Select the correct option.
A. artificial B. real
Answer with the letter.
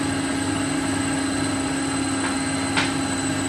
B